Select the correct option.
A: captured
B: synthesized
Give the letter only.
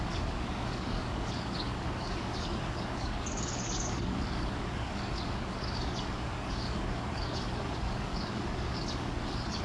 B